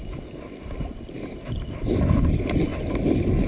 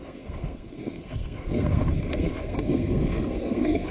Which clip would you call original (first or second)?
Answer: first